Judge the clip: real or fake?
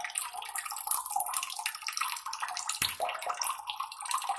real